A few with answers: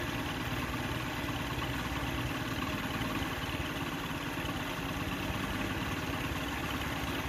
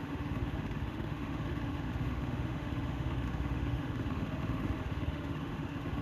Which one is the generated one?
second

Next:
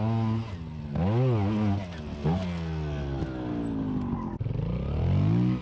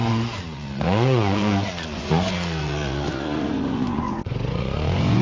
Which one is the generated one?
second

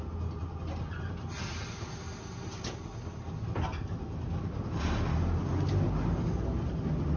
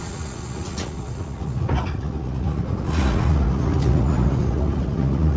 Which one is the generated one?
second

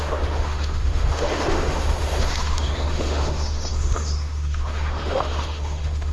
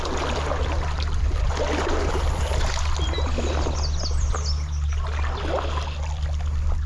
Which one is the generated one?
first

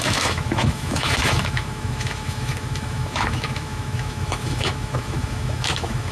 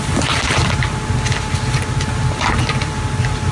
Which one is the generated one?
first